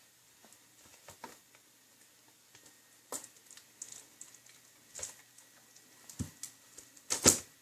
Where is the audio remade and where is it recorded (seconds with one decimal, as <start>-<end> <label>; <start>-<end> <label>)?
0.0-7.6 recorded